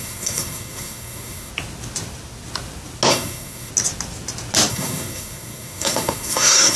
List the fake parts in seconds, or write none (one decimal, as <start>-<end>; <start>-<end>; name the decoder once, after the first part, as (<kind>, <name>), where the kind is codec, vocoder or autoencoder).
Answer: 0.0-1.5 (codec, SNAC); 3.1-3.7; 4.7-6.8